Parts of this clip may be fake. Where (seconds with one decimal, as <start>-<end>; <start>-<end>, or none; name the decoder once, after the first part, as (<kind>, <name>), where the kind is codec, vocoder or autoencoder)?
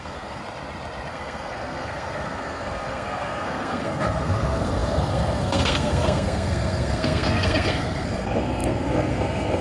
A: 0.0-0.4 (codec, SNAC); 1.1-9.6